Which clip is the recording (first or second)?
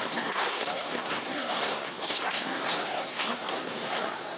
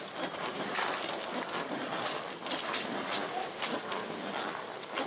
second